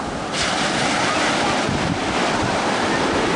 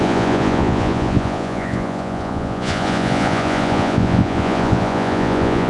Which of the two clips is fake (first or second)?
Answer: second